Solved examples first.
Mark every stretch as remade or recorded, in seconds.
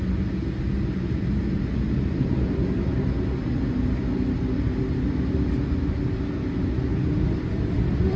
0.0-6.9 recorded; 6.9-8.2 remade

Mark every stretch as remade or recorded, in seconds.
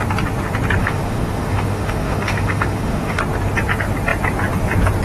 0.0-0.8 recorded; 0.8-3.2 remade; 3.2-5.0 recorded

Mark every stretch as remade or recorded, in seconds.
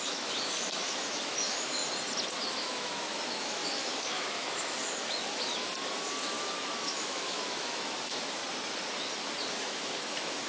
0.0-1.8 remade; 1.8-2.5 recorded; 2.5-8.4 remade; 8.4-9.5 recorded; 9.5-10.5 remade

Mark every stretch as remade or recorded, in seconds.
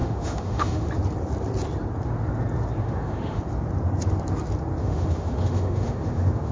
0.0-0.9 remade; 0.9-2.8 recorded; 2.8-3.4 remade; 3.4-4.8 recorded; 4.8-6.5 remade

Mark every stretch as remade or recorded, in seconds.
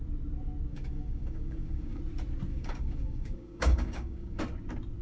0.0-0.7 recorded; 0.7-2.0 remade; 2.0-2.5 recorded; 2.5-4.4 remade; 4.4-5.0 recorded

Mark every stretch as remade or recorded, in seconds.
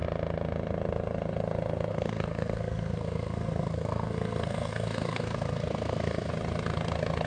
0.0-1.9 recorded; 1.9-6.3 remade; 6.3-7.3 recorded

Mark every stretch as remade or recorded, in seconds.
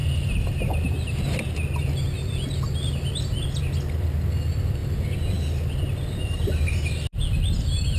0.0-8.0 recorded